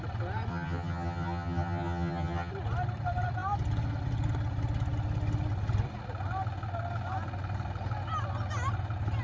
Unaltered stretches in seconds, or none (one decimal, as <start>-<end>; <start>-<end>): 0.0-0.5; 2.5-9.2